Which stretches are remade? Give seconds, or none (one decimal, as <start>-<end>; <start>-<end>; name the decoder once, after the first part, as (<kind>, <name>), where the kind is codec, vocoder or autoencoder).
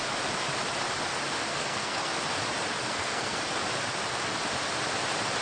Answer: 1.5-2.1 (codec, SNAC); 2.8-3.4